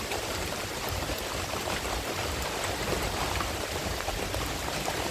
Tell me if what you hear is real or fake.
real